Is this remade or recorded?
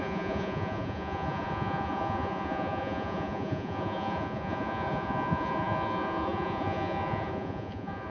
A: remade